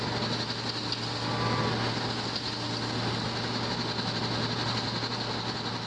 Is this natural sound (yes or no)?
yes